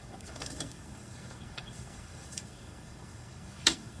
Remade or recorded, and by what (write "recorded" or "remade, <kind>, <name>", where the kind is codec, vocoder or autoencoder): remade, codec, SNAC